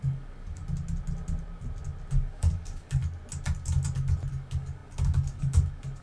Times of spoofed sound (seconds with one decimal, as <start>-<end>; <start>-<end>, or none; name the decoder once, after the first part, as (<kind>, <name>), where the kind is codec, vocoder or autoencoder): 0.0-0.6 (codec, DAC); 2.1-3.0; 4.3-6.0